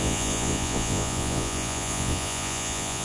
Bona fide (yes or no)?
no